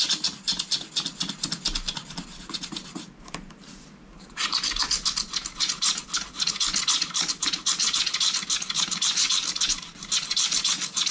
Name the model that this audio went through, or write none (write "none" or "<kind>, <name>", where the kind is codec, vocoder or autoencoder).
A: none